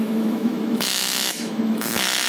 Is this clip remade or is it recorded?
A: remade